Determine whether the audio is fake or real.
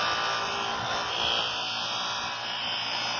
real